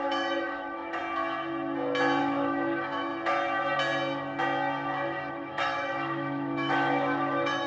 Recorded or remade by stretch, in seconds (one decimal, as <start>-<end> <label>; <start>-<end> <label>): 0.0-1.0 remade; 1.0-2.2 recorded; 2.2-3.1 remade; 3.1-5.3 recorded; 5.3-7.7 remade